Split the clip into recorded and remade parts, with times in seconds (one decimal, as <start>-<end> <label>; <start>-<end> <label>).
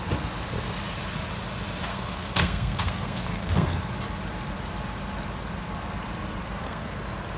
0.0-1.9 recorded; 1.9-3.8 remade; 3.8-6.4 recorded; 6.4-7.0 remade; 7.0-7.4 recorded